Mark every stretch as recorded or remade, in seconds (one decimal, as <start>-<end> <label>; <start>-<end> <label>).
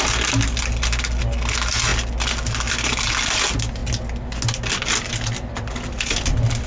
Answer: 0.0-6.7 recorded